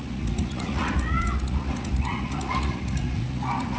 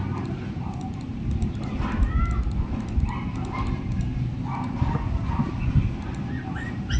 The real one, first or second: second